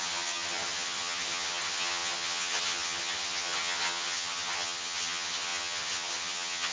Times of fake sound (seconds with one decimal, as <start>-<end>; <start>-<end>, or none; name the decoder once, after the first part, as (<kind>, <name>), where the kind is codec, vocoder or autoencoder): 0.0-6.7 (vocoder, HiFi-GAN)